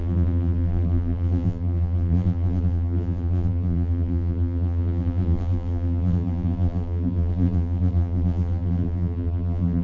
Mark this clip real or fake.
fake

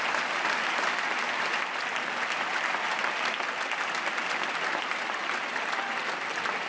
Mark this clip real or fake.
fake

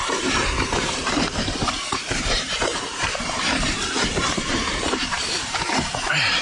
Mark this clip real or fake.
fake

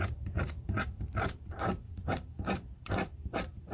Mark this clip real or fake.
fake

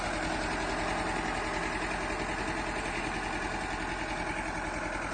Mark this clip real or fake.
real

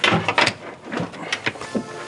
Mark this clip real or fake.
real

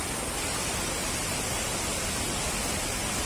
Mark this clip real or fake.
real